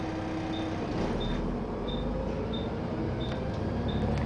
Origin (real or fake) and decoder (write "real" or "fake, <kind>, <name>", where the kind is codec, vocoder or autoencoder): real